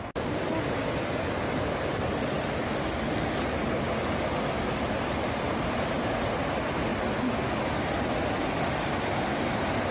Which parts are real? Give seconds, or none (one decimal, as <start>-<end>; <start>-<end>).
0.0-9.9